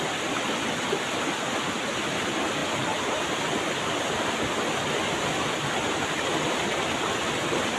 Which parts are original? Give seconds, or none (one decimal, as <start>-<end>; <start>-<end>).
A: 0.0-7.8